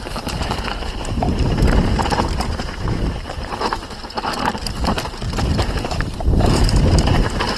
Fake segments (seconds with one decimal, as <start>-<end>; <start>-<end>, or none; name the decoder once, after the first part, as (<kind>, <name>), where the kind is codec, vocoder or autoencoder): 0.0-4.0 (vocoder, BigVGAN v2); 5.4-7.6